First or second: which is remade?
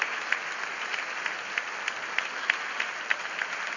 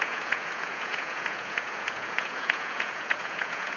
second